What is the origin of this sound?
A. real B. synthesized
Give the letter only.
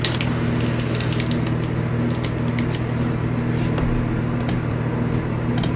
A